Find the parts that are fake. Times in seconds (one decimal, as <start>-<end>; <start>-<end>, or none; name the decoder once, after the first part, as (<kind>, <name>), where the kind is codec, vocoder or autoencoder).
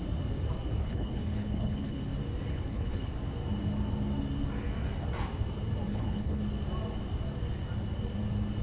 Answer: 0.8-2.0 (codec, HILCodec); 2.5-3.1; 5.9-6.4